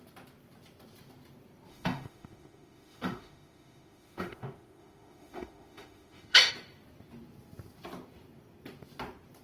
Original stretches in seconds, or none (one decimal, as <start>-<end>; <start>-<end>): 0.0-1.7; 6.5-9.4